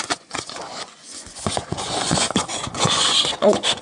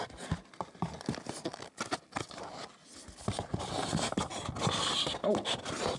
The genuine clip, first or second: second